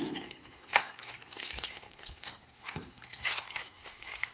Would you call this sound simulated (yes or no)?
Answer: yes